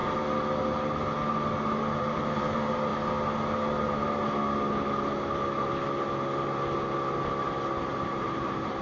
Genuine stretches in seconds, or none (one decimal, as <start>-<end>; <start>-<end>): 0.0-2.0; 2.9-7.9

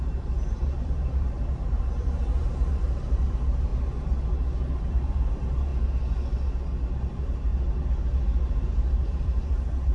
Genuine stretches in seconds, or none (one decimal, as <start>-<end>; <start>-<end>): 3.7-4.9; 5.7-7.0; 7.5-8.5

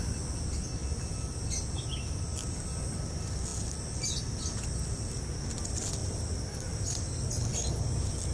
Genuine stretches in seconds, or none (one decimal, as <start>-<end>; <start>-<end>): 0.0-8.3

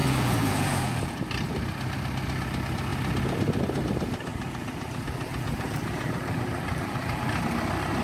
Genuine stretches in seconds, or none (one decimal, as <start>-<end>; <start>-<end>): 1.1-4.3; 7.4-8.0